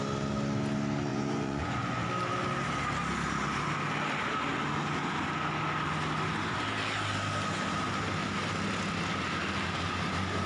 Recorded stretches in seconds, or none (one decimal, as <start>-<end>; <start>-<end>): 0.0-1.1; 2.0-10.5